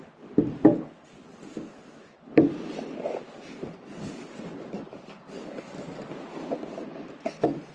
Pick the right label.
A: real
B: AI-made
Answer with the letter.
A